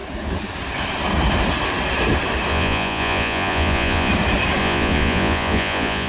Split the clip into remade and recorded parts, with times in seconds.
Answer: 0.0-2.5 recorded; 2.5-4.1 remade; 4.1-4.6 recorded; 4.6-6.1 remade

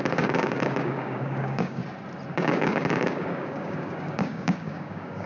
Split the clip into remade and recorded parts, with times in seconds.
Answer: 0.0-1.8 remade; 1.8-2.3 recorded; 2.3-5.3 remade

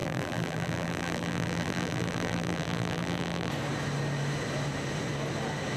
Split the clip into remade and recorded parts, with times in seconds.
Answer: 0.0-3.5 remade; 3.5-5.8 recorded

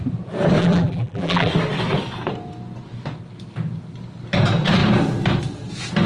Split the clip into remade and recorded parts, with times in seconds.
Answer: 0.0-0.6 recorded; 0.6-1.5 remade; 1.5-6.1 recorded

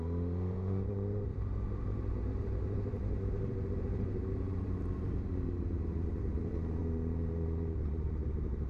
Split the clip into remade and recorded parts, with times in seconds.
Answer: 0.0-8.7 remade